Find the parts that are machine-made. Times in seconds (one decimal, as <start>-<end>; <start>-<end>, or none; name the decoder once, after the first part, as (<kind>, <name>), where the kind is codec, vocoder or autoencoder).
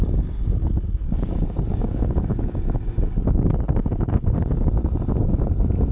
0.0-4.1 (codec, DAC)